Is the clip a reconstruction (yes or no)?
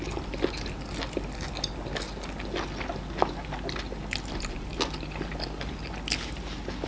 no